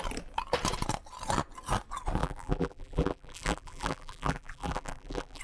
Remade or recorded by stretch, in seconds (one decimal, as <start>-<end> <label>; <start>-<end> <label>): 0.0-2.2 recorded; 2.2-5.4 remade